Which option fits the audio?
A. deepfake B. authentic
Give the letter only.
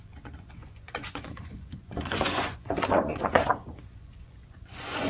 A